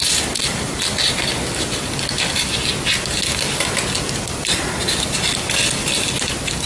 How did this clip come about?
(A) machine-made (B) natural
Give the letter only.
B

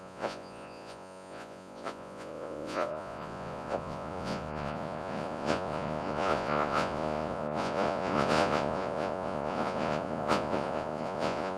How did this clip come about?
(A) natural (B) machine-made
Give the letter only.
B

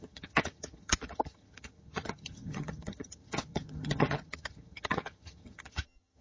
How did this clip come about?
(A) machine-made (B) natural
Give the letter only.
A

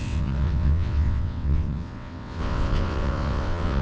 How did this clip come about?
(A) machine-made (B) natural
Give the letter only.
A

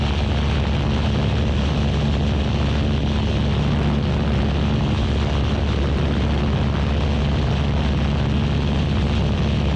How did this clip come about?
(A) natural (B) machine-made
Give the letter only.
A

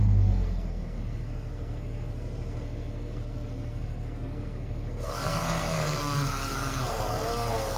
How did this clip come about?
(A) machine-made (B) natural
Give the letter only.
A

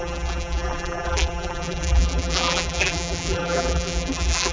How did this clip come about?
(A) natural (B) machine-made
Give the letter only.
B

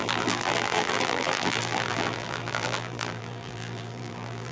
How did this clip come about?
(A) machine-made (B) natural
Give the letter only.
A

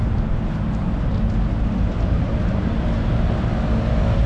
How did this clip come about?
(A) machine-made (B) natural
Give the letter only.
B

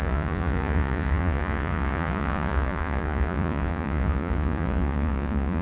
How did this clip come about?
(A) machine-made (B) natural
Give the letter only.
A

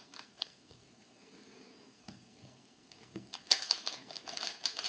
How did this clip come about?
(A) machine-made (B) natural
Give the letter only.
A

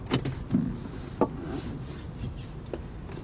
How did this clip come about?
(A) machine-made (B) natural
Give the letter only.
B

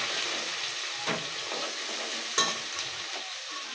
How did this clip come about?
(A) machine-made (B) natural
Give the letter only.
B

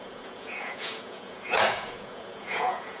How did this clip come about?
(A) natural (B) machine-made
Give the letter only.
B